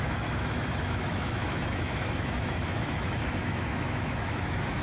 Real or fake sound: fake